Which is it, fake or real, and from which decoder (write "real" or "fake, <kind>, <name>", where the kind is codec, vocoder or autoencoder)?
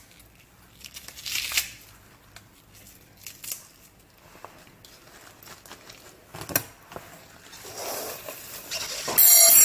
real